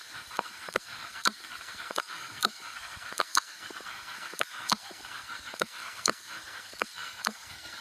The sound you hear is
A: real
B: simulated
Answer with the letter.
B